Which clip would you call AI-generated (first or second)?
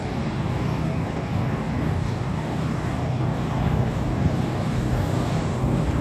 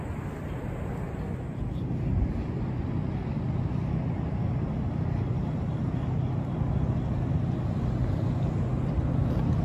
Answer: first